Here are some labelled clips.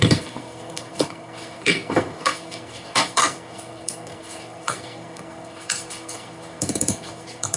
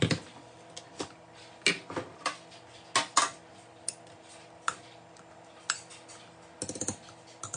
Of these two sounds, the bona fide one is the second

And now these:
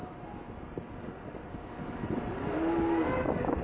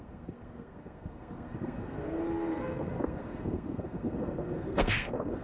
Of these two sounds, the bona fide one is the first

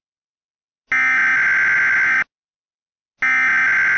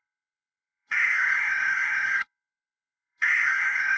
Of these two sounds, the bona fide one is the first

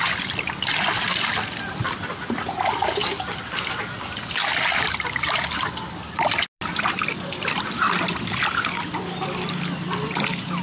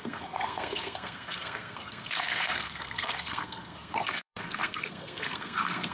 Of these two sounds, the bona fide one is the first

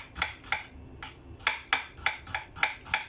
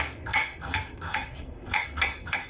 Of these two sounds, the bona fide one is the first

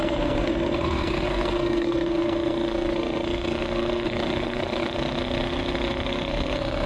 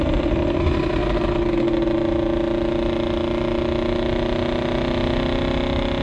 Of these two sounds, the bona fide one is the second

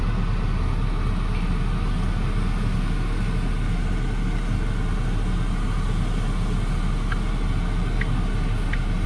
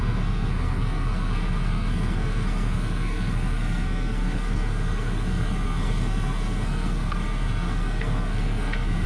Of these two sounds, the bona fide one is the first